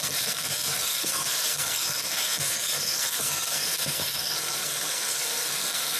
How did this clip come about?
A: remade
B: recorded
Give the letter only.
A